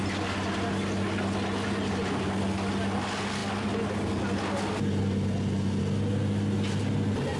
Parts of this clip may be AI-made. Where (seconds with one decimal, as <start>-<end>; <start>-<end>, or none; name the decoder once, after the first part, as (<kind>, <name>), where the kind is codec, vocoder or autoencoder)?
none